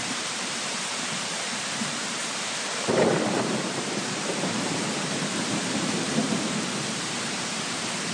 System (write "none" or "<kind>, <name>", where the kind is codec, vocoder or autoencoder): vocoder, BigVGAN v2